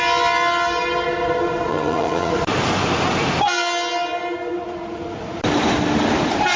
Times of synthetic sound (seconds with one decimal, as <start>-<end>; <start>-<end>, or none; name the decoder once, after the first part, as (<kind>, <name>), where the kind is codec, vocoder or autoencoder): 1.7-2.3 (vocoder, HiFi-GAN)